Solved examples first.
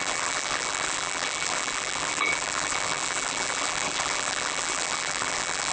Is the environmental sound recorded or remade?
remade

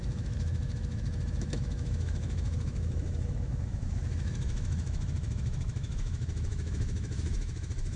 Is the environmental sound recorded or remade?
remade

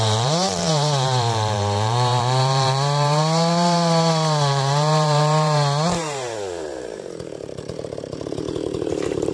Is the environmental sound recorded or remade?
remade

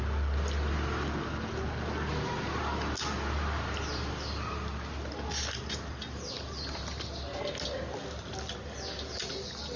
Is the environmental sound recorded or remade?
recorded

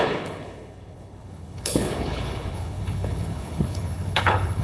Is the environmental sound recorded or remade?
remade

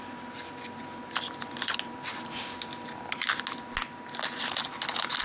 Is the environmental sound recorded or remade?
recorded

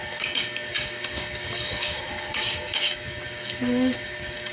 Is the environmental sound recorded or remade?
remade